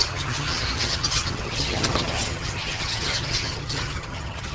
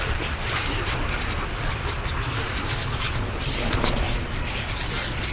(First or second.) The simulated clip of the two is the first